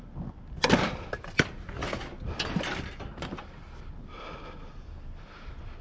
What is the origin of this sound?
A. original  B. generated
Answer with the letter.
A